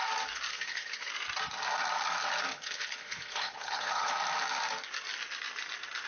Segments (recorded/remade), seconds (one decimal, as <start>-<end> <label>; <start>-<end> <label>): 0.0-0.5 recorded; 0.5-1.1 remade; 1.1-2.5 recorded; 2.5-4.1 remade; 4.1-6.1 recorded